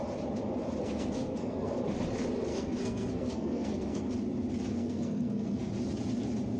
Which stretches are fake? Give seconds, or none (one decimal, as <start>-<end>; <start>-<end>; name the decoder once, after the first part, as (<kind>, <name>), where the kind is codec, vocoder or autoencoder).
0.8-1.7 (codec, SNAC); 2.5-4.1; 4.7-5.7